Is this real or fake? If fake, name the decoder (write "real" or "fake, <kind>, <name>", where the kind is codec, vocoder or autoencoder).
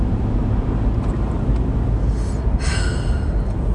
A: real